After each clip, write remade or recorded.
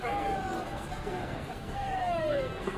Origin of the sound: remade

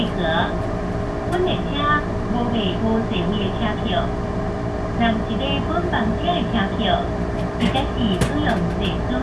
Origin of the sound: recorded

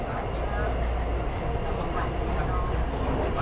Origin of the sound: recorded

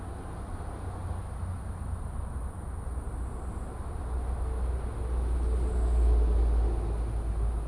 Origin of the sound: recorded